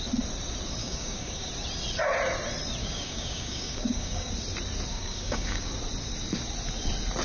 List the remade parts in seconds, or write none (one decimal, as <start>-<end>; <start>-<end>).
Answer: 0.8-1.5; 2.8-4.3; 4.9-5.7